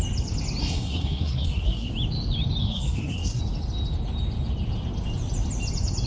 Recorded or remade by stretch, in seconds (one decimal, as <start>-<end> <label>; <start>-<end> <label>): 0.0-0.6 recorded; 0.6-1.9 remade; 1.9-2.6 recorded; 2.6-3.4 remade; 3.4-6.1 recorded